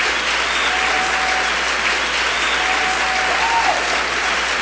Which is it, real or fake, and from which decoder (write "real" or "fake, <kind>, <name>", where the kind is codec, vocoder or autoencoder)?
real